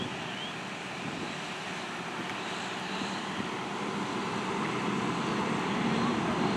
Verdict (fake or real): fake